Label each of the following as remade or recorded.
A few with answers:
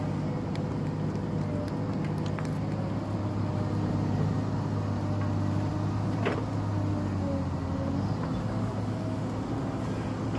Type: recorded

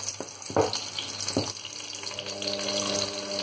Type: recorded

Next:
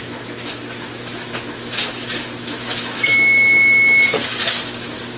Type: remade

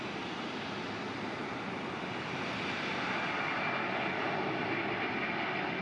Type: recorded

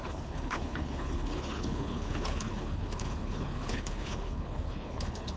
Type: remade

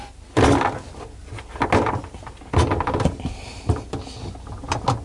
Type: recorded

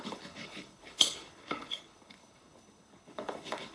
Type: remade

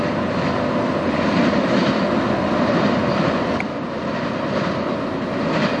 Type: recorded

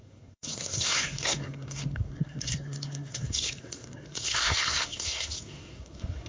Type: remade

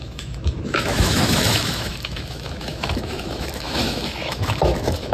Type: remade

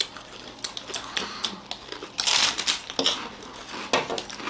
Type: recorded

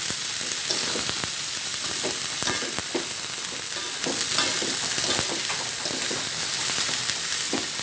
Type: recorded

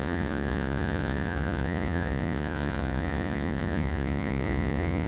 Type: remade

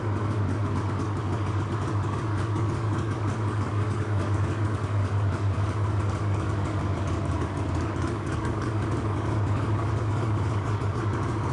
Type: remade